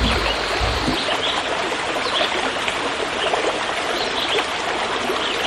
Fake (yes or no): no